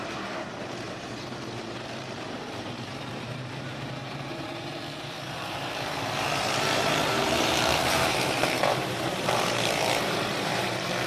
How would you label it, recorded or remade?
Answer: remade